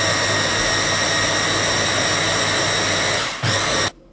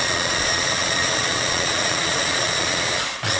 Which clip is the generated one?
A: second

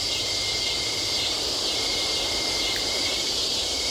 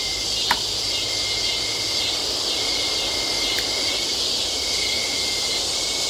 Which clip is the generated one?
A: first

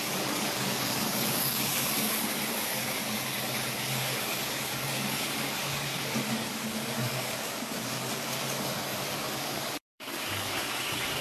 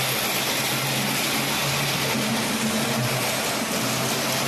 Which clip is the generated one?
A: first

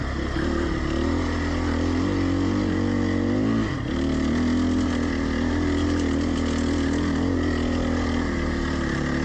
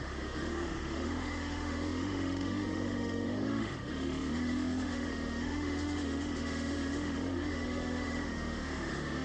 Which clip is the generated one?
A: second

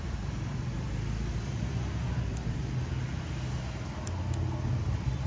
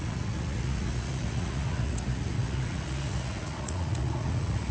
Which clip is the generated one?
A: second